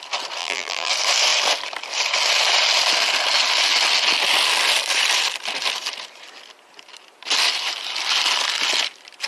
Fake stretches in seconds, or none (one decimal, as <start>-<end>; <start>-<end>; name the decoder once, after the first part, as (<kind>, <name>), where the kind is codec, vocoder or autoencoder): 0.4-0.9 (vocoder, BigVGAN v2)